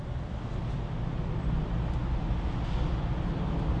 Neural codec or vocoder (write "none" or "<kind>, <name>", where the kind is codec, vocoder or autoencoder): none